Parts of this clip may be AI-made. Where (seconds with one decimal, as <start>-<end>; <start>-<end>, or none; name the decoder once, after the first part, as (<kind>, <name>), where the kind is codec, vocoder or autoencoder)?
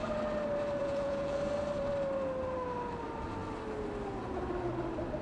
0.8-1.4 (vocoder, Vocos)